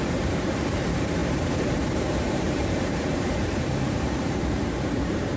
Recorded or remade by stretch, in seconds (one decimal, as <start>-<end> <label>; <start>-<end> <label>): 0.0-5.4 remade